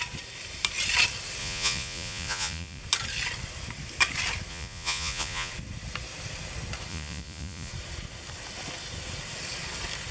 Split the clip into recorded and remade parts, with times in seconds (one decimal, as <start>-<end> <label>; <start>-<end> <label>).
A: 0.0-1.4 recorded; 1.4-2.8 remade; 2.8-4.5 recorded; 4.5-5.5 remade; 5.5-6.9 recorded; 6.9-7.7 remade; 7.7-10.1 recorded